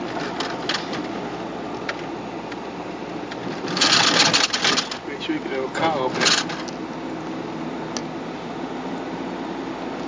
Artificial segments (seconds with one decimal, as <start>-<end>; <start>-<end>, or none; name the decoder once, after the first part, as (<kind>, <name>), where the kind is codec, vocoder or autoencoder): none